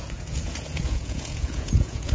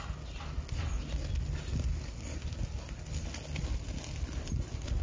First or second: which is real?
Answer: second